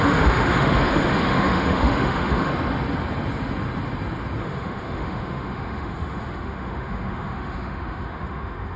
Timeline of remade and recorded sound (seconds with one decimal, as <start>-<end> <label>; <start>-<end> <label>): 0.0-2.5 remade; 2.5-4.4 recorded; 4.4-8.8 remade